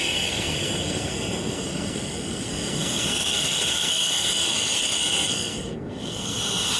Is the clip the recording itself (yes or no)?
no